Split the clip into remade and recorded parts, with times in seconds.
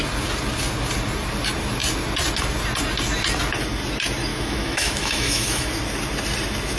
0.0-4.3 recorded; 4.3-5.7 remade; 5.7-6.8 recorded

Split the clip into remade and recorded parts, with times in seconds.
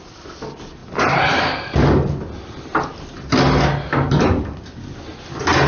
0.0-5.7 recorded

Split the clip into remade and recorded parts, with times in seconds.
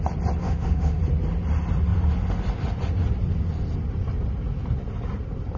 0.0-0.4 recorded; 0.4-1.0 remade; 1.0-5.6 recorded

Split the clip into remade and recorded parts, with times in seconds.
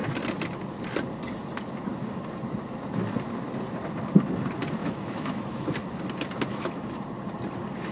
0.0-4.8 recorded; 4.8-5.7 remade; 5.7-6.5 recorded; 6.5-7.0 remade; 7.0-7.9 recorded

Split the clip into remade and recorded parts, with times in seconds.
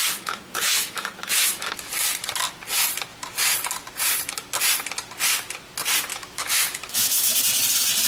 0.0-1.9 remade; 1.9-6.1 recorded; 6.1-7.4 remade; 7.4-8.1 recorded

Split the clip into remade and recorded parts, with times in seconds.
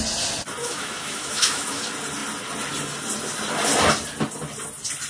0.0-0.6 recorded; 0.6-1.8 remade; 1.8-5.1 recorded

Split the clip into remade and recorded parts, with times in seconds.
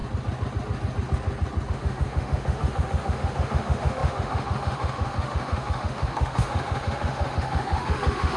0.0-1.7 recorded; 1.7-8.4 remade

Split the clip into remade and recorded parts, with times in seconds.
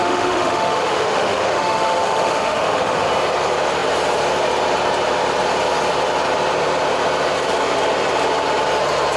0.0-3.1 remade; 3.1-9.2 recorded